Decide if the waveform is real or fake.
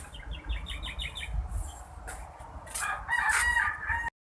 real